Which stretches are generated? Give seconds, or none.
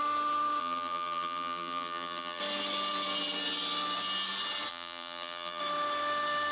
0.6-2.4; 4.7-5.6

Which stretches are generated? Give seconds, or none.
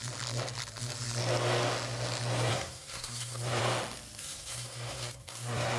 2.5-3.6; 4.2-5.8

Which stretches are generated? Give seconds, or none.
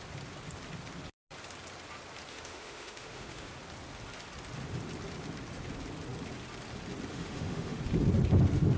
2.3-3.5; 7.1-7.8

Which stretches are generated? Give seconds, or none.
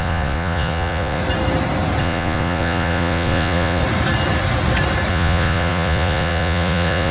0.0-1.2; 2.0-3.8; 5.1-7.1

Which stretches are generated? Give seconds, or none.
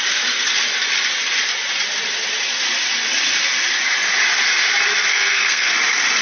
5.1-5.7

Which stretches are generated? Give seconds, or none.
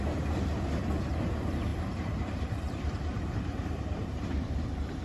1.7-5.0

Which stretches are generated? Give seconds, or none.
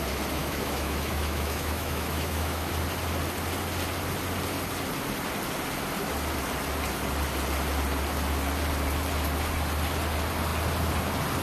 0.4-2.7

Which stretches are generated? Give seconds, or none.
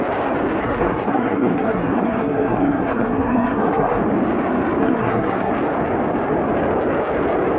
0.6-4.0; 4.8-5.5